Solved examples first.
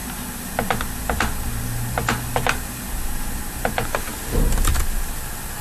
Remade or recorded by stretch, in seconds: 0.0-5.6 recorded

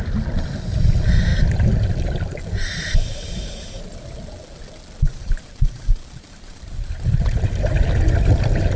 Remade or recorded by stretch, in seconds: 0.0-8.8 recorded

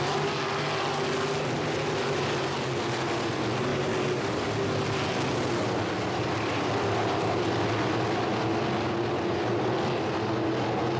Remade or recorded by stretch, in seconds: 0.0-11.0 recorded

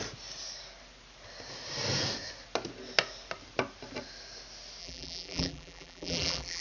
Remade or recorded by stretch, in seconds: 0.0-4.8 recorded; 4.8-6.6 remade